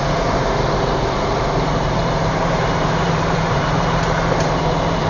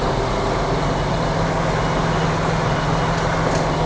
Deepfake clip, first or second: first